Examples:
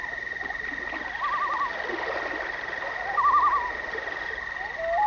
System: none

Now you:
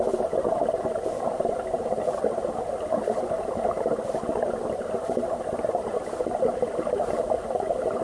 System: vocoder, BigVGAN v2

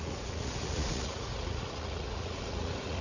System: vocoder, Vocos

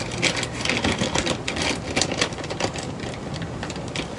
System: none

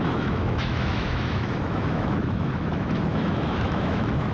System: autoencoder, DAC-VAE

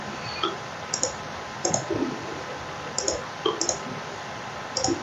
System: vocoder, BigVGAN v2